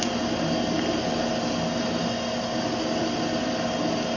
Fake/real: real